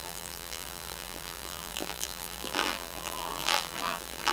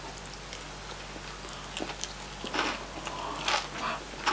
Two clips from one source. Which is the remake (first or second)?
first